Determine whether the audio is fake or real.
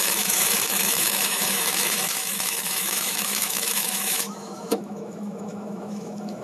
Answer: fake